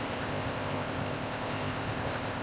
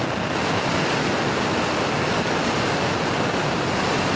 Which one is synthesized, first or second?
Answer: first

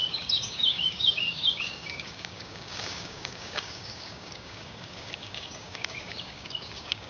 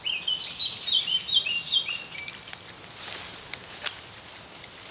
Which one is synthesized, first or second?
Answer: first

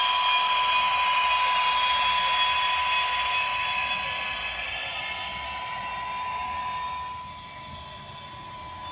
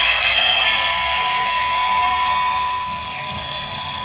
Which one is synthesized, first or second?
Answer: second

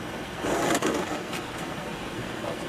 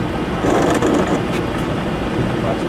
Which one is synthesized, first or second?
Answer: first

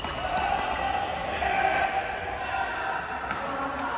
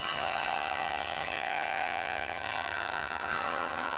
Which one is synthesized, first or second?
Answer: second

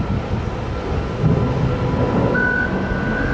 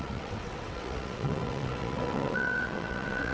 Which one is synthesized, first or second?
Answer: second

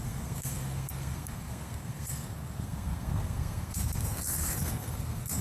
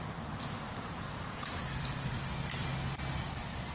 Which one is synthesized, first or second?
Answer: first